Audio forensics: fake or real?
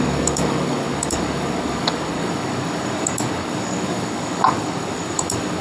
fake